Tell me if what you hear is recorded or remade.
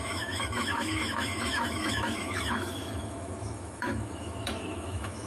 remade